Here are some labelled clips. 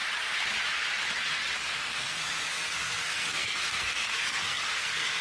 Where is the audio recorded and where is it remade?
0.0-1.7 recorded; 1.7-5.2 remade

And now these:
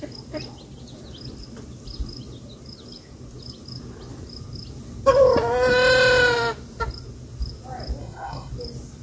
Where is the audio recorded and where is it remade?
0.0-8.0 recorded; 8.0-8.5 remade; 8.5-9.0 recorded

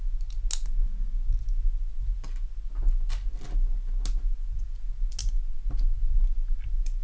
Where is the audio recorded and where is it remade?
0.0-7.0 recorded

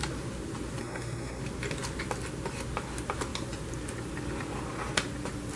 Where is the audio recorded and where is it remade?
0.0-0.8 recorded; 0.8-1.4 remade; 1.4-5.6 recorded

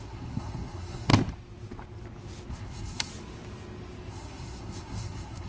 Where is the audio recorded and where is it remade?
0.0-1.1 remade; 1.1-2.5 recorded; 2.5-3.1 remade; 3.1-4.1 recorded; 4.1-5.5 remade

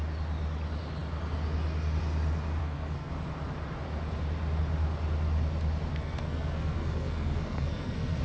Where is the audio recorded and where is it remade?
0.0-2.6 recorded; 2.6-3.1 remade; 3.1-5.9 recorded; 5.9-8.2 remade